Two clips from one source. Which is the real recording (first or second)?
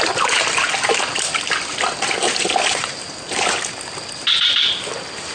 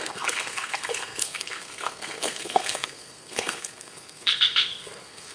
first